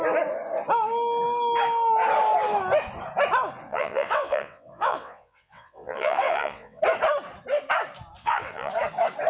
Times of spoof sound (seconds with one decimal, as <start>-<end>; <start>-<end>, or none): 3.7-6.8; 8.2-8.7